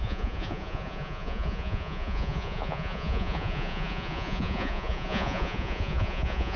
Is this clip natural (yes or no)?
no